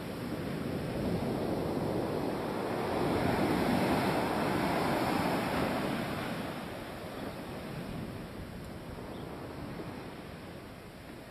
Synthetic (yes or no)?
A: no